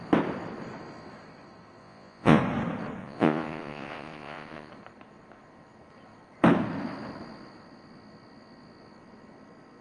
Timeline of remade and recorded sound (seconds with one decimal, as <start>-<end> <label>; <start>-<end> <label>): 0.0-1.8 recorded; 1.8-2.4 remade; 2.4-3.0 recorded; 3.0-4.7 remade; 4.7-9.8 recorded